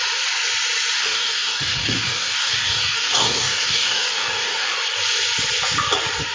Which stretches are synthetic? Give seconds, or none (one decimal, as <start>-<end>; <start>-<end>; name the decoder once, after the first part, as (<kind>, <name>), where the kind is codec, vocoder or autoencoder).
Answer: 1.0-4.8 (codec, DAC)